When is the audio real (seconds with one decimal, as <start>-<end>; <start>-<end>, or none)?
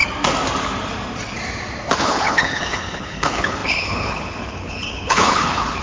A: 0.0-2.0